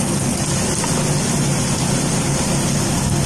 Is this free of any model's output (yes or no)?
yes